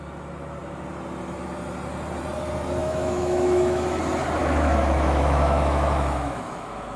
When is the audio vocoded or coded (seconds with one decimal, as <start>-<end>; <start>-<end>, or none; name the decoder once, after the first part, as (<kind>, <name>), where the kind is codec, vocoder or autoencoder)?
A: 2.8-4.0 (autoencoder, DAC-VAE); 4.4-7.0